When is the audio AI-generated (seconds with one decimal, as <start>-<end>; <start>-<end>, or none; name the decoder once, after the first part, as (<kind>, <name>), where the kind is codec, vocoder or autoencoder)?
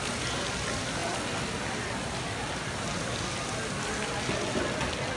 none